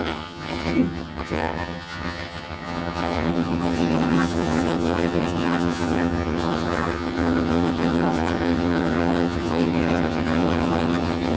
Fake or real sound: fake